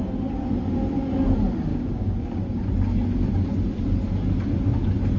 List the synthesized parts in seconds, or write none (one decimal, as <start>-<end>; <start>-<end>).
1.7-2.4